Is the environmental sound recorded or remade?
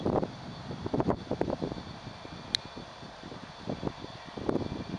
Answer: recorded